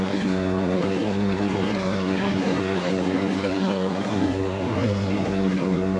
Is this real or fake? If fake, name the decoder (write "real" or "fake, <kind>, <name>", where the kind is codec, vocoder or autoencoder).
fake, codec, SNAC